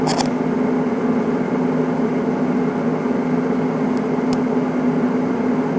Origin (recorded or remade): recorded